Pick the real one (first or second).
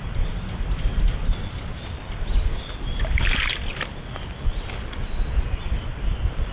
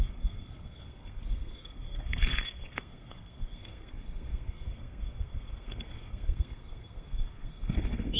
first